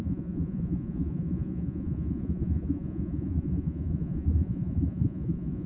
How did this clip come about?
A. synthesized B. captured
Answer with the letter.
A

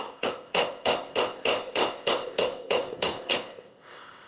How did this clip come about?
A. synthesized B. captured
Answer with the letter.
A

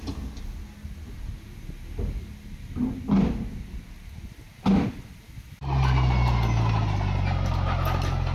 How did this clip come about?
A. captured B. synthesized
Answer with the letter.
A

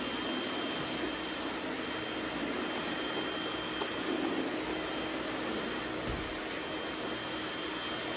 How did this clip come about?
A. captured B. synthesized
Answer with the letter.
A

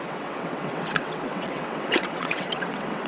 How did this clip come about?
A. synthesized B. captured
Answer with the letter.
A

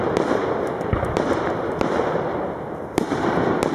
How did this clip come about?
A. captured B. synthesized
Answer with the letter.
A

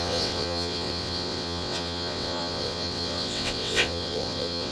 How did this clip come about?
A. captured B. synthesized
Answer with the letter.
B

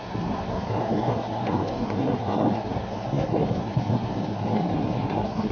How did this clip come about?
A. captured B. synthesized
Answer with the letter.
B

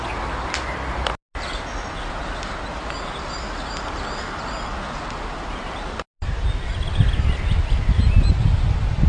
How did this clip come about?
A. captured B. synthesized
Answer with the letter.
A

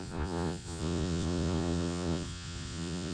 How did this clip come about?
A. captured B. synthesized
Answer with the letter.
B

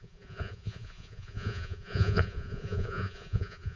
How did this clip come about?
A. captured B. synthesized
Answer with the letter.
B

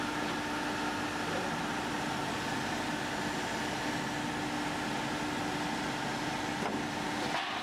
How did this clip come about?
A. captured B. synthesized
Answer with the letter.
A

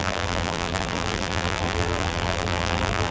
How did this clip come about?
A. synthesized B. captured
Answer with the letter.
A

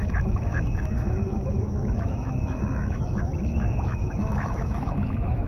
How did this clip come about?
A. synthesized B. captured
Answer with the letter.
A